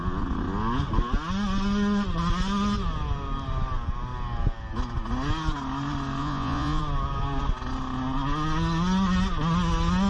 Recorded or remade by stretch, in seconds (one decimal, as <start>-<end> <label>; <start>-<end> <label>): 0.0-6.2 recorded; 6.2-6.8 remade; 6.8-10.1 recorded

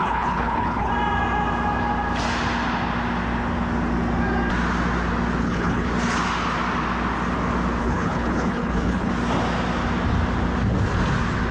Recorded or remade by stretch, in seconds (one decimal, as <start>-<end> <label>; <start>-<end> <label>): 0.0-0.9 remade; 0.9-5.4 recorded; 5.4-5.9 remade; 5.9-7.8 recorded; 7.8-9.1 remade; 9.1-11.5 recorded

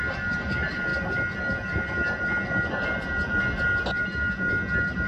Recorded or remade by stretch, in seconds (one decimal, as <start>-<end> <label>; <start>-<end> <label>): 0.0-5.1 recorded

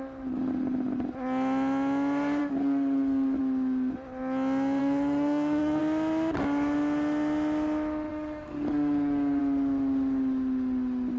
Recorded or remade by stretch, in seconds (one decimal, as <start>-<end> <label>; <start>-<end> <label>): 0.0-2.4 recorded; 2.4-3.4 remade; 3.4-4.8 recorded; 4.8-5.8 remade; 5.8-8.1 recorded; 8.1-9.4 remade; 9.4-11.2 recorded

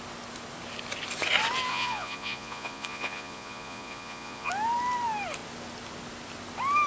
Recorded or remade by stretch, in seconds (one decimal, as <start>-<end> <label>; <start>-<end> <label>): 0.0-1.7 recorded; 1.7-4.5 remade; 4.5-6.9 recorded

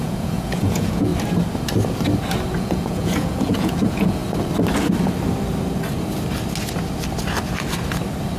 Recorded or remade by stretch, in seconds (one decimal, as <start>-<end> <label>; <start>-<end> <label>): 0.0-1.1 remade; 1.1-2.6 recorded; 2.6-4.2 remade; 4.2-8.4 recorded

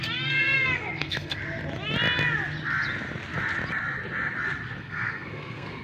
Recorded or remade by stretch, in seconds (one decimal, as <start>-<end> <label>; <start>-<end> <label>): 0.0-1.4 remade; 1.4-4.8 recorded; 4.8-5.8 remade